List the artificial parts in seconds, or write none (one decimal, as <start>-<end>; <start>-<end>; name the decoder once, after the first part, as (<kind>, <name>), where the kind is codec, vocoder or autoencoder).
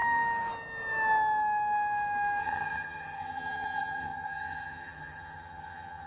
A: 2.4-6.1 (vocoder, HiFi-GAN)